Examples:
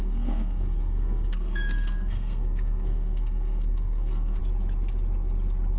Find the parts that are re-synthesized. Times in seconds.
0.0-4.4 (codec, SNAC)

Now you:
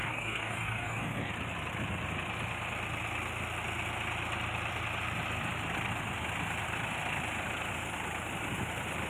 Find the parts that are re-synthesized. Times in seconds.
0.0-1.3 (codec, DAC)

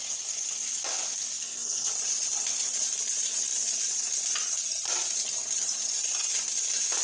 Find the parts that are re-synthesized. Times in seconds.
1.4-1.9 (codec, SNAC)

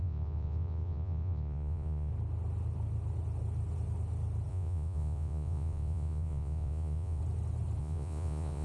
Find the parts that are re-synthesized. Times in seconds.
0.0-2.1 (vocoder, Vocos); 4.5-7.2; 7.8-8.6

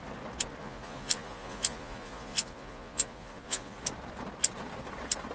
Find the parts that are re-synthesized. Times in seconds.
0.6-3.8 (vocoder, Vocos)

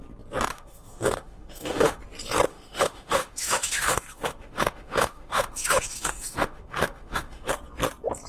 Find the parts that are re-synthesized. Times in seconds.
0.5-2.0 (autoencoder, DAC-VAE); 2.5-7.5

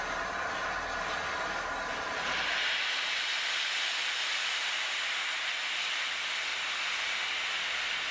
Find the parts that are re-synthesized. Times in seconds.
none